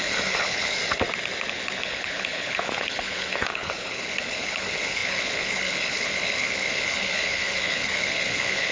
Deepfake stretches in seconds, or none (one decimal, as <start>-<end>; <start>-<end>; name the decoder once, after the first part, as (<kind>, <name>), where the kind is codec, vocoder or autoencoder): 0.0-0.8 (codec, HILCodec); 1.5-8.7